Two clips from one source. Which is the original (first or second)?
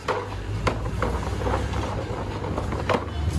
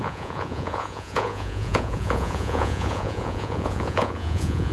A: first